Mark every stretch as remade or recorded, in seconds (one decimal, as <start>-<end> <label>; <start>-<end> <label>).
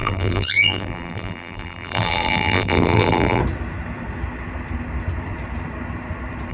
0.0-3.4 remade; 3.4-6.5 recorded